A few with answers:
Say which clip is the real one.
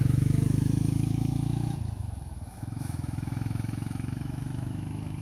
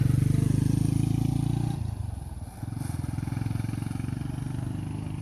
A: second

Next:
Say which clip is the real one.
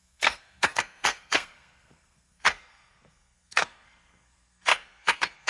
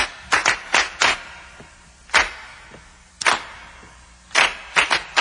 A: second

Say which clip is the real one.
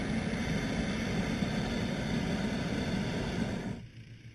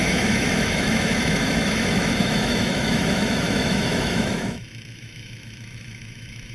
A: first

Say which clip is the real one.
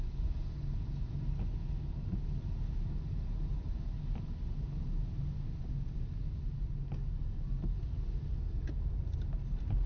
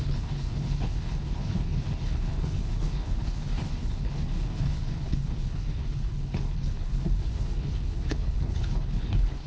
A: first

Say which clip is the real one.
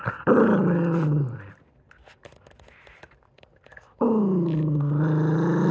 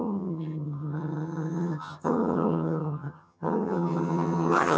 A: first